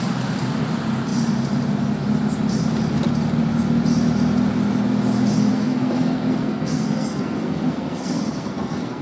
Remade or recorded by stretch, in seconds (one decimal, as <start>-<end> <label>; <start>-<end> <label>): 0.0-5.5 recorded; 5.5-9.0 remade